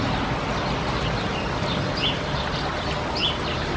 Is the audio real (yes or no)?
yes